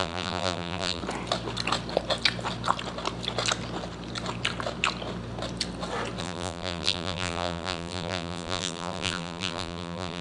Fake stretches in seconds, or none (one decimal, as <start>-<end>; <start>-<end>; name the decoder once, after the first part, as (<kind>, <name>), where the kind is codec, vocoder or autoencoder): 0.0-1.0 (vocoder, BigVGAN v2); 6.2-10.2